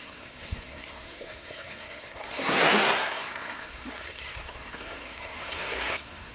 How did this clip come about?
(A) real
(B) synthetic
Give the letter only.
B